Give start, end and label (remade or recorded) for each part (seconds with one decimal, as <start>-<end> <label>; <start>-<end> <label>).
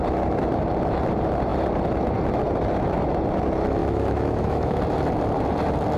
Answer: 0.0-3.8 recorded; 3.8-4.8 remade; 4.8-6.0 recorded